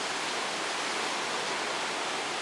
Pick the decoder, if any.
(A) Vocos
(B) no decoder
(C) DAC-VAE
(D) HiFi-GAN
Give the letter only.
B